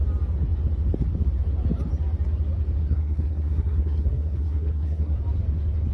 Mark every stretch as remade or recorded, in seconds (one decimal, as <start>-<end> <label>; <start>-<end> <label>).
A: 0.0-2.8 recorded; 2.8-5.2 remade; 5.2-5.9 recorded